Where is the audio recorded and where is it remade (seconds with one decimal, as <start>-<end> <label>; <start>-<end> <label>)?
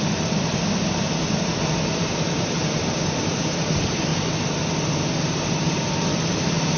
0.0-0.5 remade; 0.5-2.3 recorded; 2.3-4.1 remade; 4.1-5.2 recorded; 5.2-6.8 remade